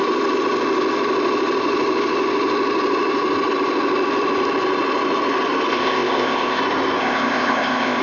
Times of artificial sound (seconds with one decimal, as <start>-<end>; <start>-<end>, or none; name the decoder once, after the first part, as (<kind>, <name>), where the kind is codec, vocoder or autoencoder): 5.7-6.6 (codec, ZipCodec); 7.0-8.0